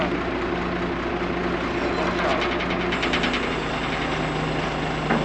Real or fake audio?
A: real